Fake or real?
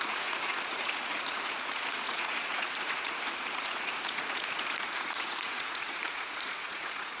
fake